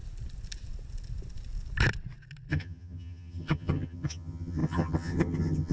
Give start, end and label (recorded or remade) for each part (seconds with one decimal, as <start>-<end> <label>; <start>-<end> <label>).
0.0-2.5 recorded; 2.5-5.7 remade